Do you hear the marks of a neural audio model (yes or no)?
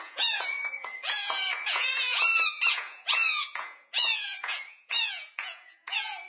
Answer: yes